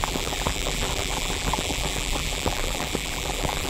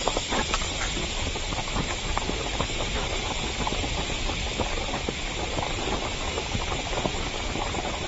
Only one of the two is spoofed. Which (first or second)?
first